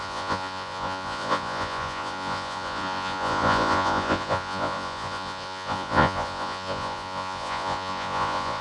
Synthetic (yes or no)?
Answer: yes